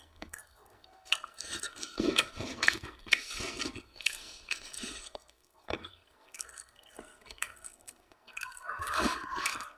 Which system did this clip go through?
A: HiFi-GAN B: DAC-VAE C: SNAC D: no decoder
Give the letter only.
C